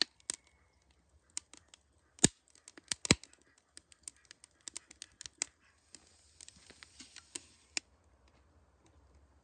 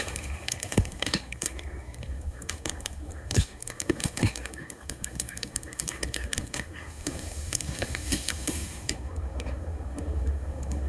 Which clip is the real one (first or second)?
first